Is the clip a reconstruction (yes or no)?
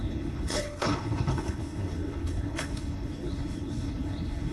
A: yes